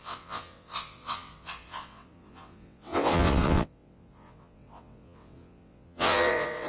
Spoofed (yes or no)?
yes